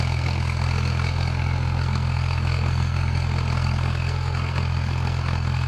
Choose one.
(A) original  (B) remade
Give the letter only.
B